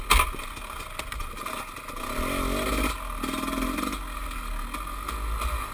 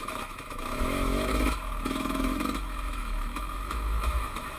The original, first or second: first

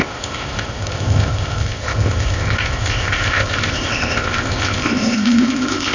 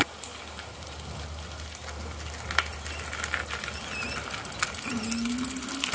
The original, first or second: second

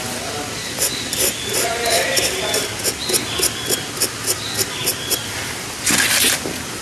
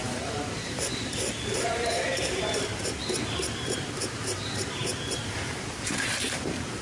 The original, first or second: first